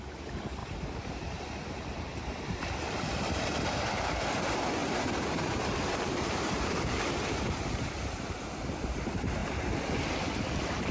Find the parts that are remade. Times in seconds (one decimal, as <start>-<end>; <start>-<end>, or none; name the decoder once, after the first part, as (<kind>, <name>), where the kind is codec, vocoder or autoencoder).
0.6-3.6 (vocoder, BigVGAN v2); 4.8-7.9